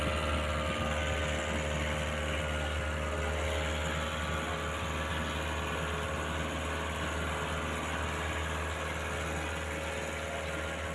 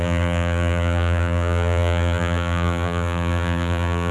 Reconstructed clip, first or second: second